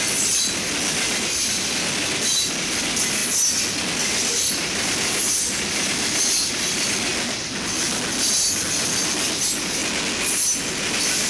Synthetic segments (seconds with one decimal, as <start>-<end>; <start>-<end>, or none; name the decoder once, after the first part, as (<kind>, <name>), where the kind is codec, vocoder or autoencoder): 0.0-3.2 (vocoder, BigVGAN v2); 3.8-7.1; 8.7-9.8; 10.9-11.3